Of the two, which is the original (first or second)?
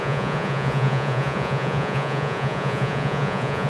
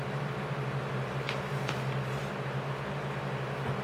second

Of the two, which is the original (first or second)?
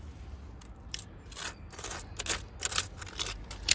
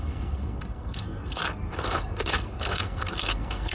first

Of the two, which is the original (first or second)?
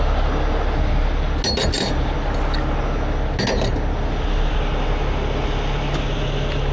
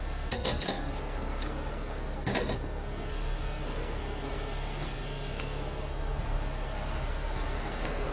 first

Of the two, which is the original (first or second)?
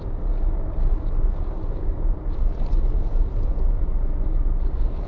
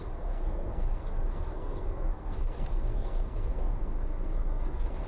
first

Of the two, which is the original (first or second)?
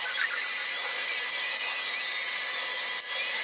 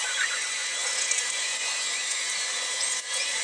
first